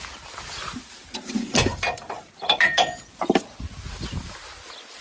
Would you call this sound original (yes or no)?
yes